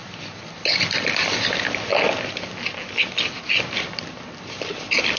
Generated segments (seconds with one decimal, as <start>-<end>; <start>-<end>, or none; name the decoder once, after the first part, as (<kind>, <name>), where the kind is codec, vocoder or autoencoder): none